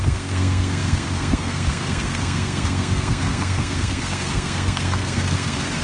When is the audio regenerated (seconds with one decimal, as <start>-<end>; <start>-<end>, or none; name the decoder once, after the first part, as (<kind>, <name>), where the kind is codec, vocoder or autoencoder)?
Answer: 0.0-5.8 (codec, SNAC)